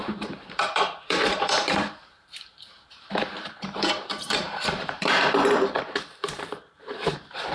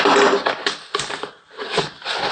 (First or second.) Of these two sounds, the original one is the second